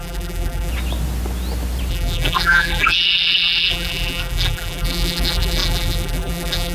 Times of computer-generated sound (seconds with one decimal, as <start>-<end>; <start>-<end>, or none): 0.0-0.7; 1.9-6.7